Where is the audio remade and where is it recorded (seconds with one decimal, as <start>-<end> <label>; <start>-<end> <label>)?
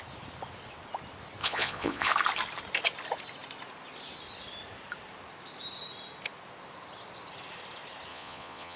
0.0-1.4 recorded; 1.4-2.1 remade; 2.1-8.1 recorded; 8.1-8.8 remade